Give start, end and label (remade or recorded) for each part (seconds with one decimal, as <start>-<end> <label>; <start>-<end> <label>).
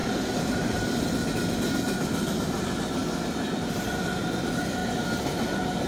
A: 0.0-1.3 remade; 1.3-5.9 recorded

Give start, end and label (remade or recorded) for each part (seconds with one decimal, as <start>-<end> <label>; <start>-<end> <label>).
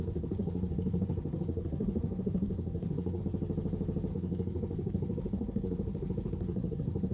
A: 0.0-3.2 remade; 3.2-4.1 recorded; 4.1-7.1 remade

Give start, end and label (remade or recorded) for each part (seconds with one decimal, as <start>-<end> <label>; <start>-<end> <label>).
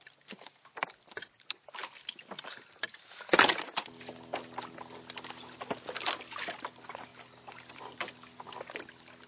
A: 0.0-9.3 recorded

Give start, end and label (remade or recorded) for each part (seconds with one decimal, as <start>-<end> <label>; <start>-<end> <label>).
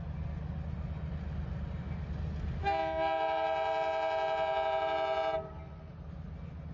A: 0.0-6.7 recorded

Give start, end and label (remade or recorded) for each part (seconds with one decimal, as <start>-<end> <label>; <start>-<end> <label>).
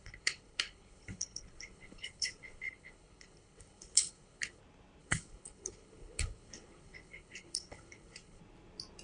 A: 0.0-4.6 remade; 4.6-5.0 recorded; 5.0-8.4 remade; 8.4-9.0 recorded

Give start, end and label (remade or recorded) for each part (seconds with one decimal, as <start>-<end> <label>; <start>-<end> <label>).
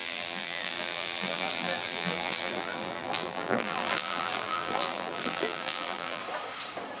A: 0.0-6.2 remade; 6.2-7.0 recorded